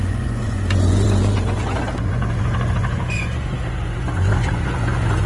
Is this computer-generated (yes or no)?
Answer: yes